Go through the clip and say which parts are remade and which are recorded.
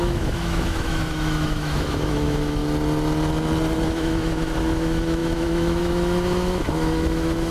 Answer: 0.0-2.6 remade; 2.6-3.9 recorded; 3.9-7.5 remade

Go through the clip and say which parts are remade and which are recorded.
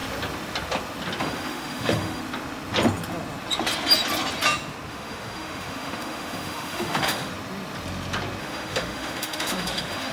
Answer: 0.0-1.2 recorded; 1.2-2.2 remade; 2.2-4.9 recorded; 4.9-7.3 remade; 7.3-8.4 recorded; 8.4-10.1 remade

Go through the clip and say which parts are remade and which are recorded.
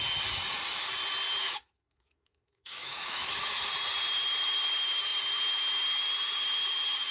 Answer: 0.0-1.4 recorded; 1.4-3.7 remade; 3.7-7.1 recorded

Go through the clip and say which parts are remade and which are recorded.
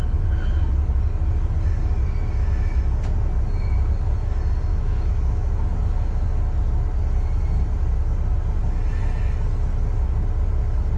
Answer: 0.0-4.7 recorded; 4.7-5.5 remade; 5.5-11.0 recorded